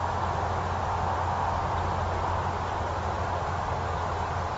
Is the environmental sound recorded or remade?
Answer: recorded